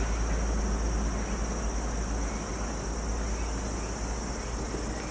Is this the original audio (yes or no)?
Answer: yes